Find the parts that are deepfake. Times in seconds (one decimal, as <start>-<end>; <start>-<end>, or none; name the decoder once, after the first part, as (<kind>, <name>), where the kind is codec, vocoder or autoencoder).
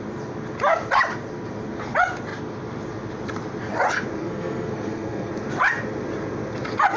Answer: 4.2-5.3 (codec, SNAC)